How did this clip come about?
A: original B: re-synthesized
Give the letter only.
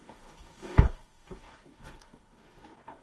B